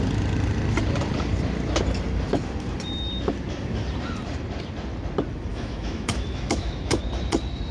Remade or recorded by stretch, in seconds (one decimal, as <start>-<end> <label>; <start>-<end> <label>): 0.0-5.5 recorded; 5.5-7.0 remade; 7.0-7.7 recorded